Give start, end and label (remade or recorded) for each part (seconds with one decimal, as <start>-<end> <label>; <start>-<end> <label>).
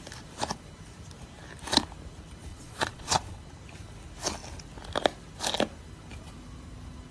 0.0-2.5 recorded; 2.5-3.4 remade; 3.4-7.1 recorded